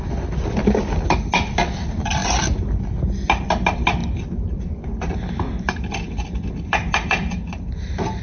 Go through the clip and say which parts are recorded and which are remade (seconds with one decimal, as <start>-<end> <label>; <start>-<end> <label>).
0.0-4.0 recorded; 4.0-8.2 remade